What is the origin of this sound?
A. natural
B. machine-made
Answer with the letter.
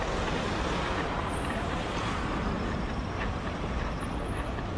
A